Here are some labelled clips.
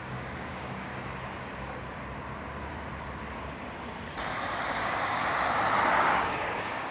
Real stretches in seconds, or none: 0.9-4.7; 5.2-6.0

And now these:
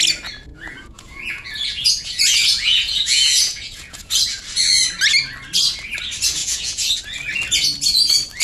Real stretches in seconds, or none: 0.0-0.5; 4.1-6.4; 7.0-8.4

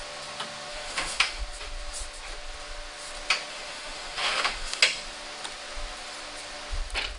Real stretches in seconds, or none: 0.0-0.7; 1.4-3.5; 4.8-7.2

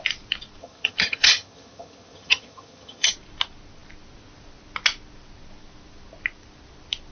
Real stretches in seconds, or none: 0.0-0.6; 3.1-7.1

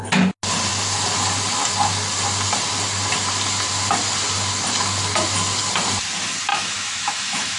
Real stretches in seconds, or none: 0.0-6.5

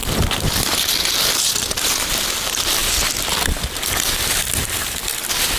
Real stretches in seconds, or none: 0.0-5.6

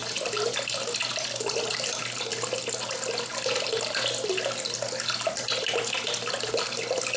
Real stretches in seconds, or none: 0.0-7.2